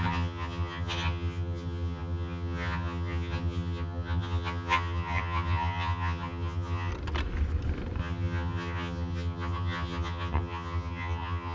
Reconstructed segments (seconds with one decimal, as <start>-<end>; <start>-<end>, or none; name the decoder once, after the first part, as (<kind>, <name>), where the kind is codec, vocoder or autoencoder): 0.0-6.9 (vocoder, HiFi-GAN); 8.0-11.5